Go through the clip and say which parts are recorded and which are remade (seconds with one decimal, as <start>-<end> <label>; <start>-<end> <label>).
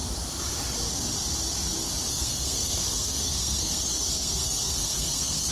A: 0.0-2.1 recorded; 2.1-5.5 remade